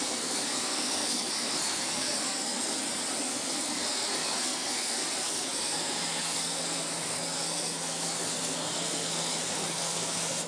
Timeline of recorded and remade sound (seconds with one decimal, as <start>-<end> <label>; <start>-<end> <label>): 0.0-2.7 remade; 2.7-3.2 recorded; 3.2-10.5 remade